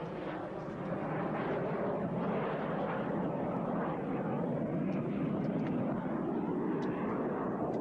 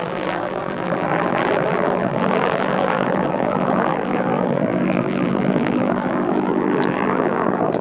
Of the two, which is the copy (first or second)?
second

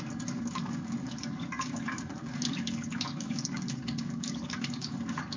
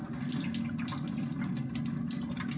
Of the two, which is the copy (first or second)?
first